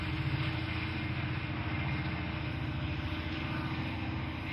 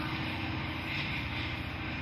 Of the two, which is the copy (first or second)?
second